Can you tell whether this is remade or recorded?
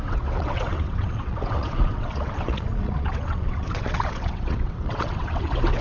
remade